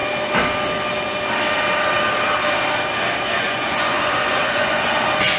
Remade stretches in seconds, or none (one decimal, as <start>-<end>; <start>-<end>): 3.2-5.4